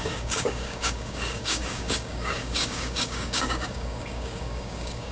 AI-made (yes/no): yes